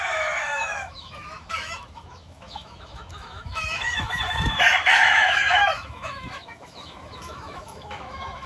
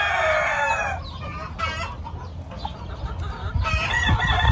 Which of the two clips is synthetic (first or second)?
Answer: first